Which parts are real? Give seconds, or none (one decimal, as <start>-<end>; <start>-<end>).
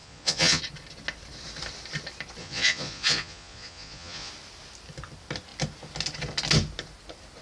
0.6-2.4; 4.3-7.4